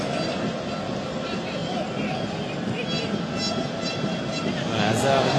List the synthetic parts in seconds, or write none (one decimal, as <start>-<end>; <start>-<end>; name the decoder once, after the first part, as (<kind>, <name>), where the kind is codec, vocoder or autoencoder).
none